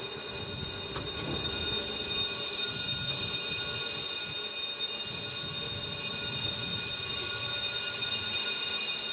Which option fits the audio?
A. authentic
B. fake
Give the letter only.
A